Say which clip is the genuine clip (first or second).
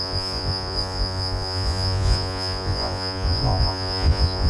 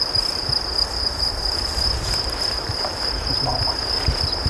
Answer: second